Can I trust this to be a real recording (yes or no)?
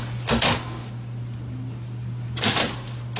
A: yes